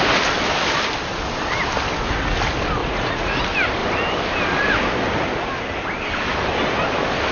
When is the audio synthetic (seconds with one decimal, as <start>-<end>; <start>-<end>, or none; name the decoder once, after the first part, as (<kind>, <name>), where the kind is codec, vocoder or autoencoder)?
2.8-3.4 (vocoder, Vocos)